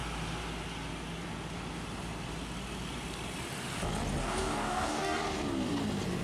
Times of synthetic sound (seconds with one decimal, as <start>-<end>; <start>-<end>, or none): 4.2-5.2